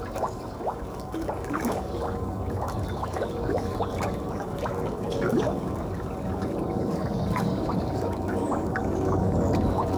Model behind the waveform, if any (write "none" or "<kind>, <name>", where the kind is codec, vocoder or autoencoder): codec, DAC